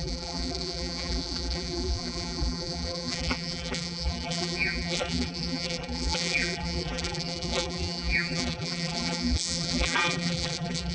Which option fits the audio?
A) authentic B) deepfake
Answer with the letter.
B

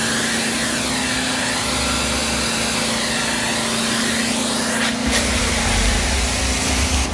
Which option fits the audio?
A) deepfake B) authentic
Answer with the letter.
B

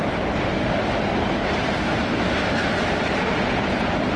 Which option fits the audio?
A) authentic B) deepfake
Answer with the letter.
B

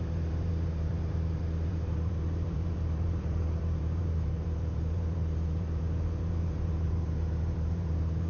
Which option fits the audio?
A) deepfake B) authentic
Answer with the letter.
A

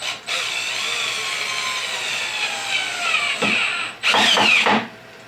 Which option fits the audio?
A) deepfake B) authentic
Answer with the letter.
B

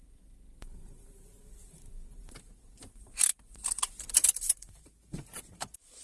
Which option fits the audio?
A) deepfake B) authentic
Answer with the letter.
A